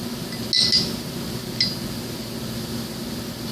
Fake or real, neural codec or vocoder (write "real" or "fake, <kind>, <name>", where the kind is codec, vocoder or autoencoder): real